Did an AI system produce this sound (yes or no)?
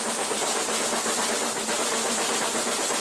no